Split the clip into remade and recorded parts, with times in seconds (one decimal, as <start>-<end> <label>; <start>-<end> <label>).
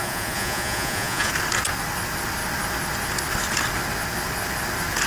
0.0-1.3 remade; 1.3-5.1 recorded